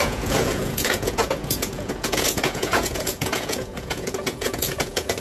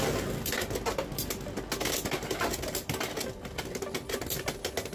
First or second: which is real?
second